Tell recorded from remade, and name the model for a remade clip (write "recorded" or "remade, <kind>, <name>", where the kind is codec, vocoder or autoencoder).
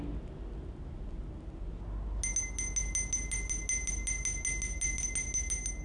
recorded